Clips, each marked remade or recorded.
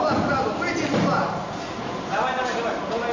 recorded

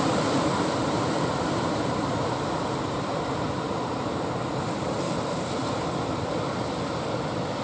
remade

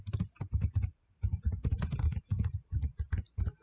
remade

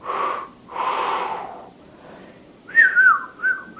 recorded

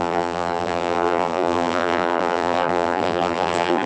remade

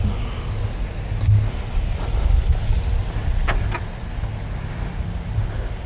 recorded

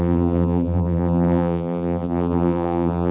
remade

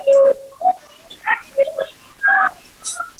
recorded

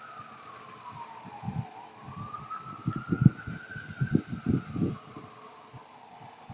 recorded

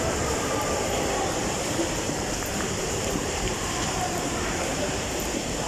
remade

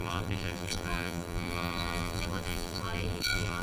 remade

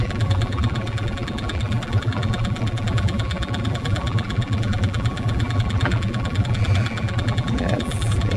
remade